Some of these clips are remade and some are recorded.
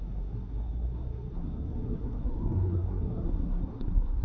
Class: remade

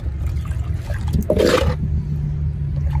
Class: recorded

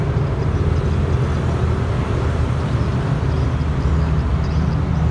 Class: recorded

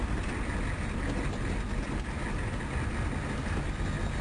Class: recorded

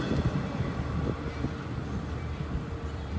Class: recorded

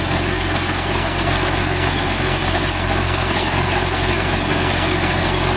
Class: remade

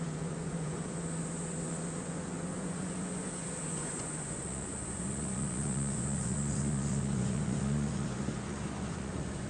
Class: remade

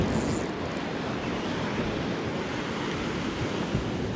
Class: recorded